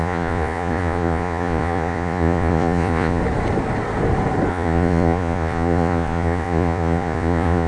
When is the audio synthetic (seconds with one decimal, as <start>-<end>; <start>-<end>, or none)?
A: 0.0-3.2; 4.5-7.7

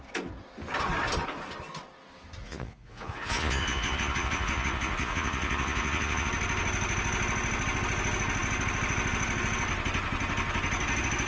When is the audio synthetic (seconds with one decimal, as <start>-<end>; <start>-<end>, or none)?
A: 2.4-6.3